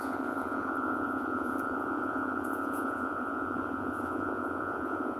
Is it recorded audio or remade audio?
remade